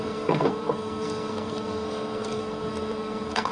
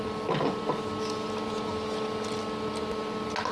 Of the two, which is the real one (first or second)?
second